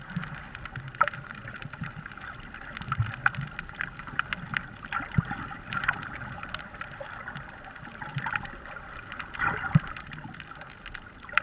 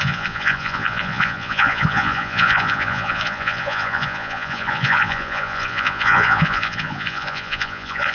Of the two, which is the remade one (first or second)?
second